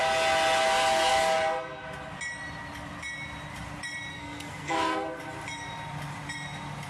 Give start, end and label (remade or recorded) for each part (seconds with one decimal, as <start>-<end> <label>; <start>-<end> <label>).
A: 0.0-4.1 recorded; 4.1-5.2 remade; 5.2-6.9 recorded